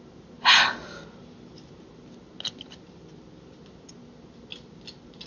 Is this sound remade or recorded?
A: recorded